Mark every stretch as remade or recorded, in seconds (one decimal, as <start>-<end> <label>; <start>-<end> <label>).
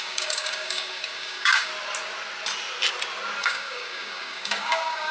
0.0-1.7 remade; 1.7-3.4 recorded; 3.4-5.1 remade